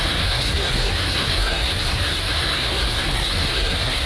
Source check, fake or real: fake